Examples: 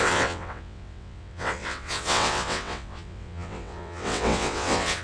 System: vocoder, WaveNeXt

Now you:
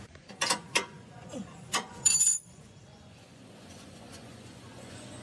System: vocoder, Vocos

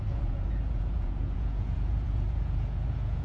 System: vocoder, Vocos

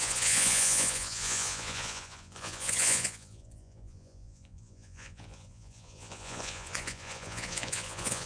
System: vocoder, Vocos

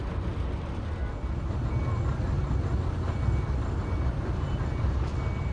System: none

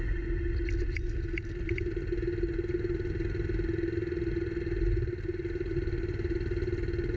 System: none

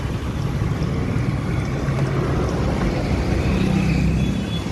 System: none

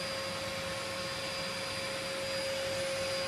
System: none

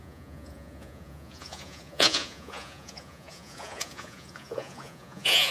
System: vocoder, Vocos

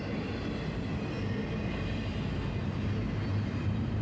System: none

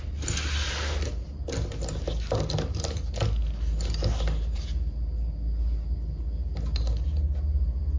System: none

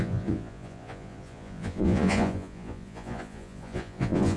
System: vocoder, Vocos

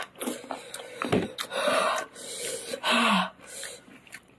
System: none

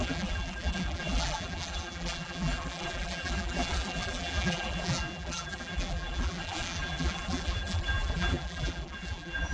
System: vocoder, BigVGAN v2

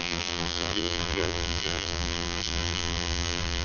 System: vocoder, BigVGAN v2